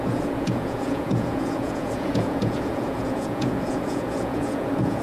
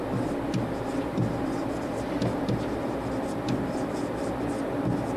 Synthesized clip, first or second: first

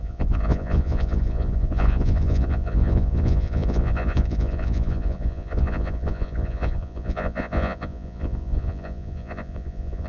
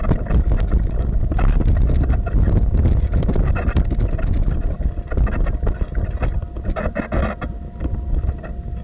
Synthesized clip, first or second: first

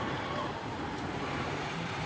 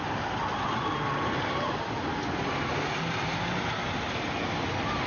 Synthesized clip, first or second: first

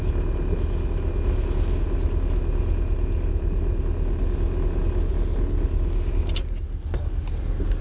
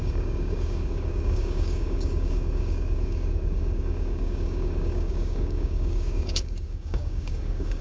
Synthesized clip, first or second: second